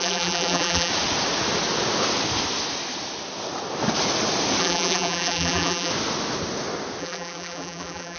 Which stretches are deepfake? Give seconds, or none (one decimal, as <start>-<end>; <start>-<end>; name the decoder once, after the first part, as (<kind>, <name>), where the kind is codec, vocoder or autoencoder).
0.0-0.9 (vocoder, BigVGAN v2); 4.6-5.9; 7.0-8.2